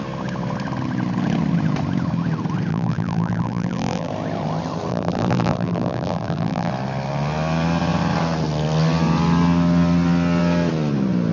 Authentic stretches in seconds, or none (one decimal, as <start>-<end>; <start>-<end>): 0.0-2.7; 4.1-4.9; 6.7-11.3